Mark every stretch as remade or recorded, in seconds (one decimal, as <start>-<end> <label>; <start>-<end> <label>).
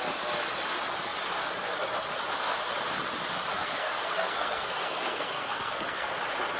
0.0-3.5 recorded; 3.5-6.1 remade; 6.1-6.6 recorded